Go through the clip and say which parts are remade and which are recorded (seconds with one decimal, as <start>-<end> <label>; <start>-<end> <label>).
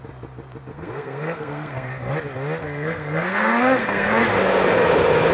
0.0-0.7 recorded; 0.7-1.9 remade; 1.9-2.6 recorded; 2.6-4.2 remade; 4.2-5.3 recorded